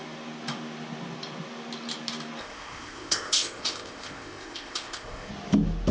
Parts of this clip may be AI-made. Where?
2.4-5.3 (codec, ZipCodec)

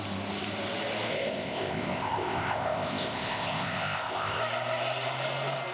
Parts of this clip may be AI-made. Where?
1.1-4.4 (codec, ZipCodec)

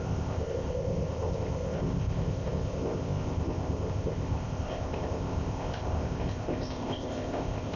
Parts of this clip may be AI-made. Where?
0.0-7.8 (codec, ZipCodec)